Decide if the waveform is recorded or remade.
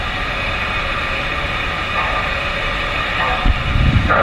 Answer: remade